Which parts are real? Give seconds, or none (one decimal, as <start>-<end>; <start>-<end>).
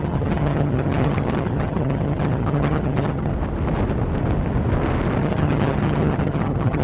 3.3-5.2